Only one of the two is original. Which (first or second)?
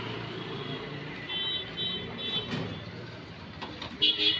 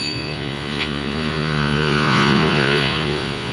first